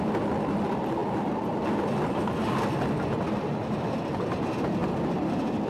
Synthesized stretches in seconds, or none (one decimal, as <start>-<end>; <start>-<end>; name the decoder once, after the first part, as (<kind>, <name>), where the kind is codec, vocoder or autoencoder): none